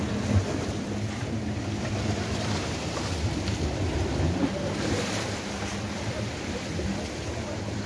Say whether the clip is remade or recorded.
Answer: remade